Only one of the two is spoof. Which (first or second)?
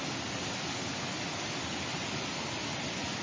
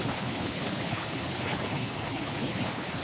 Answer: second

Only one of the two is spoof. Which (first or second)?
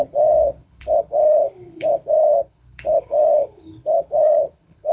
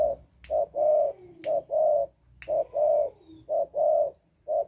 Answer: first